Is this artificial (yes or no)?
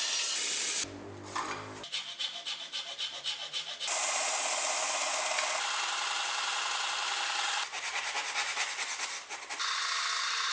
no